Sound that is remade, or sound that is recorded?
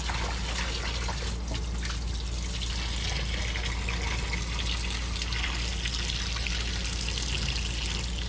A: recorded